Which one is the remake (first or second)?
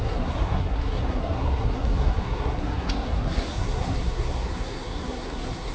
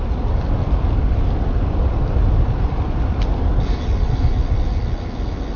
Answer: first